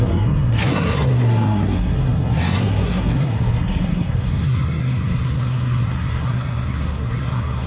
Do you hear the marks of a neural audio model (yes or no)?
yes